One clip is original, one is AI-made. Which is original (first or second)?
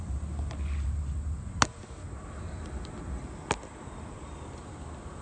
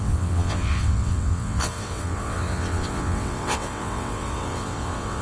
first